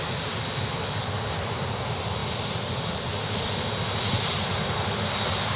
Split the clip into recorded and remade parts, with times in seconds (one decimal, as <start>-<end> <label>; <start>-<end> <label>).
0.0-5.6 recorded